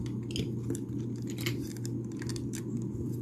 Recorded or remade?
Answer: recorded